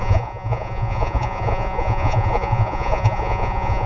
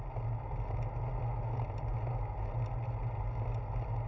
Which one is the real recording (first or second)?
second